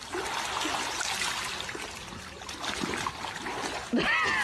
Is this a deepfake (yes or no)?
no